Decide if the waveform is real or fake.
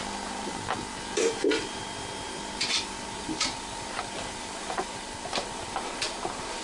fake